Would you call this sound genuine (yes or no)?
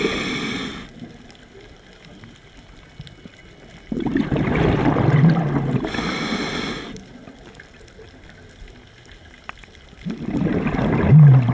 yes